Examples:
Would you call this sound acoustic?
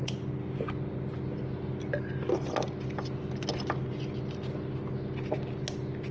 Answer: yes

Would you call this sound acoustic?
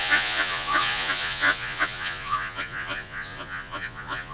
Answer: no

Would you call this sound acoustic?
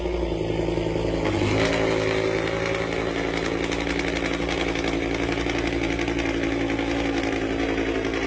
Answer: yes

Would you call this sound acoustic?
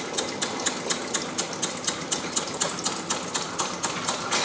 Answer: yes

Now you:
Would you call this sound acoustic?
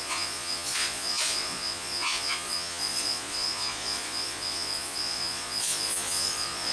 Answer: no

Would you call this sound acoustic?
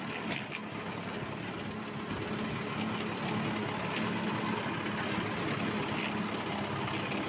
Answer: yes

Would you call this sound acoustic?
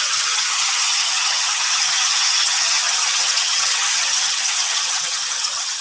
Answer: no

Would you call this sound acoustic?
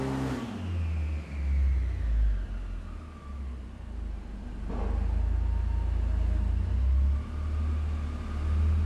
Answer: yes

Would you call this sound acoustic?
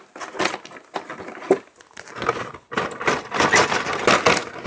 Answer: yes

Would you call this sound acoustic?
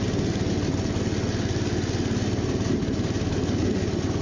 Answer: yes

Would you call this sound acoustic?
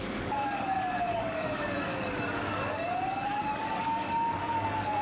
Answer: no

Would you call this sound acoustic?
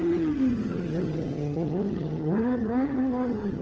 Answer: no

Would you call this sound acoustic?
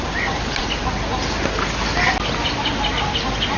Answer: yes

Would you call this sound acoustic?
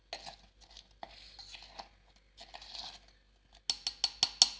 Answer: yes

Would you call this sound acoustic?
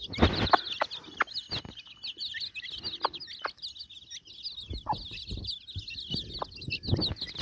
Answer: yes